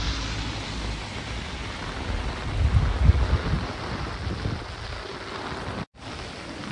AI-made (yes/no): no